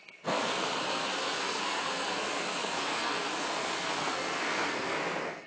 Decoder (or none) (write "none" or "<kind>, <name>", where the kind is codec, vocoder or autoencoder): codec, SNAC